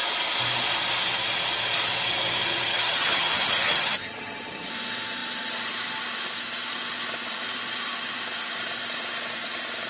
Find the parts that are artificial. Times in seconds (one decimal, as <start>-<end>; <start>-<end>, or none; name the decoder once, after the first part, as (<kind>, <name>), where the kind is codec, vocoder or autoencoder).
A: 2.7-4.7 (vocoder, HiFi-GAN)